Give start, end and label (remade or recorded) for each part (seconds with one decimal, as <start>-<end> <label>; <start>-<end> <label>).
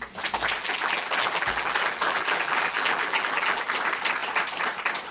0.0-0.6 recorded; 0.6-3.7 remade; 3.7-5.1 recorded